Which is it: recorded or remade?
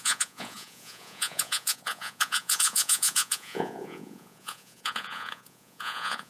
remade